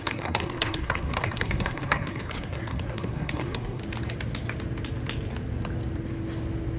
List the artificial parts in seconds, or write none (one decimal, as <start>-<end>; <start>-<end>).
0.0-3.8